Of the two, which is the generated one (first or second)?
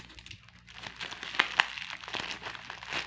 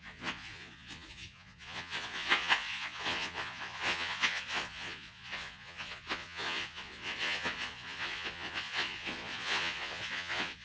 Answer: second